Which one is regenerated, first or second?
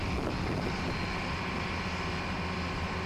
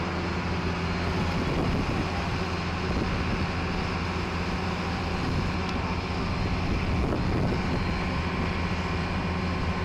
first